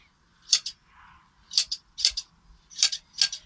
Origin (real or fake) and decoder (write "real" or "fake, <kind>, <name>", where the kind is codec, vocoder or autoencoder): real